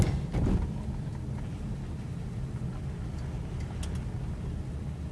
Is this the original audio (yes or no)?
yes